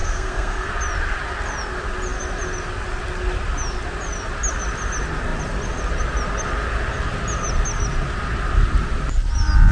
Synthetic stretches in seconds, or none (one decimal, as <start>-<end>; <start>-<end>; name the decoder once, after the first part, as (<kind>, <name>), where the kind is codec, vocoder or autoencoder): 0.0-0.7 (codec, SNAC)